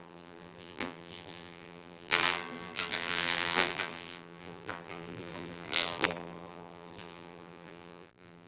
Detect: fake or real fake